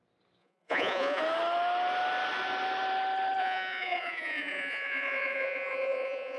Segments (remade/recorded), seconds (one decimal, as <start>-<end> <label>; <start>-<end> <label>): 0.0-0.4 recorded; 0.4-1.2 remade; 1.2-3.4 recorded; 3.4-6.4 remade